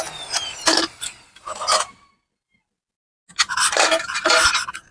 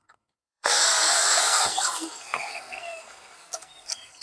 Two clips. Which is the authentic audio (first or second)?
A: first